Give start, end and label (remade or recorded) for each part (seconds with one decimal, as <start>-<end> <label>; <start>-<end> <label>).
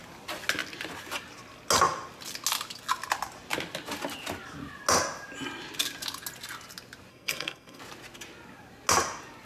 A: 0.0-7.1 recorded; 7.1-7.8 remade; 7.8-9.5 recorded